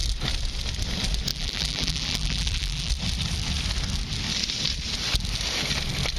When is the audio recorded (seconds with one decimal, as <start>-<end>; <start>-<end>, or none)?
0.0-1.3; 2.9-6.2